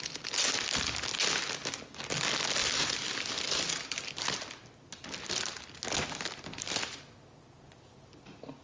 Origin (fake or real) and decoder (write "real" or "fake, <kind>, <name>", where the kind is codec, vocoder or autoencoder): real